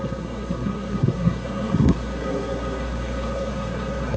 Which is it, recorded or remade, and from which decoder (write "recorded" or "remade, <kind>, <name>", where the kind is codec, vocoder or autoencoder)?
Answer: remade, codec, SNAC